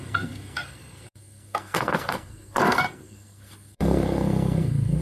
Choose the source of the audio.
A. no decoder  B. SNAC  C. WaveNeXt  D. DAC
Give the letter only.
B